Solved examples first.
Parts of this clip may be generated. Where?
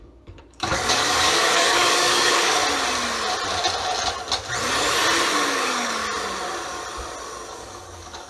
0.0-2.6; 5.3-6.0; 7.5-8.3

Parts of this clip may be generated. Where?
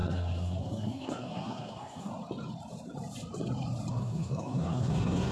0.0-2.1; 3.9-5.3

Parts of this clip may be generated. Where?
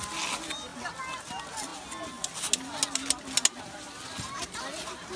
none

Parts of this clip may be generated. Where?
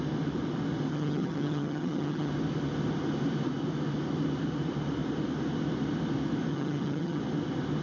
0.9-2.3; 6.5-7.2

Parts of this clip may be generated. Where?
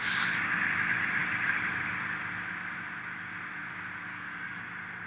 4.1-4.6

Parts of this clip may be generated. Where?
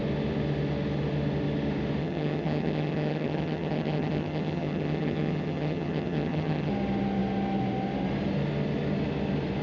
2.0-6.7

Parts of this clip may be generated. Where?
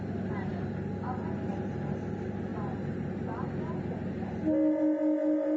none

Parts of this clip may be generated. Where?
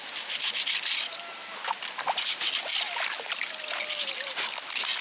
none